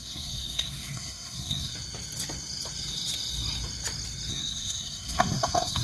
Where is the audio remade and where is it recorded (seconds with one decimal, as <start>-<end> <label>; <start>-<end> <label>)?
0.0-1.7 remade; 1.7-4.3 recorded; 4.3-5.8 remade

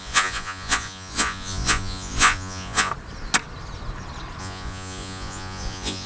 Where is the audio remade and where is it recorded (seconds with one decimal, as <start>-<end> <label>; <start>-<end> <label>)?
0.0-2.9 remade; 2.9-4.4 recorded; 4.4-6.1 remade

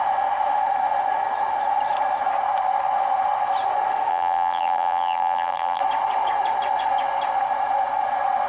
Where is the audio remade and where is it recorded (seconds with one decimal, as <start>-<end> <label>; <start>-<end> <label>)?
0.0-4.1 recorded; 4.1-5.8 remade; 5.8-8.5 recorded

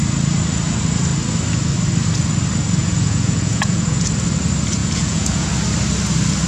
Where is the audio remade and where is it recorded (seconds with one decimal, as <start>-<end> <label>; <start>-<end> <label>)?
0.0-2.8 recorded; 2.8-4.1 remade; 4.1-4.8 recorded; 4.8-5.5 remade; 5.5-6.5 recorded

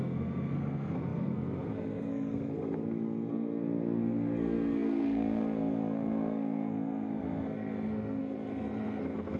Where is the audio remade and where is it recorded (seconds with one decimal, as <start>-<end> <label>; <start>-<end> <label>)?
0.0-9.4 remade

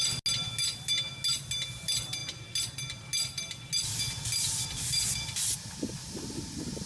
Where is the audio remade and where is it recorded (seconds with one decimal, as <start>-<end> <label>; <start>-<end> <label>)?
0.0-6.9 recorded

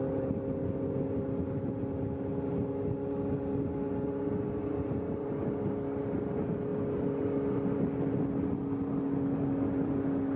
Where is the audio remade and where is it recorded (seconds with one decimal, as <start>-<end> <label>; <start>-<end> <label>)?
0.0-10.4 recorded